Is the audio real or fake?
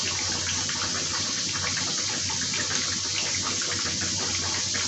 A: real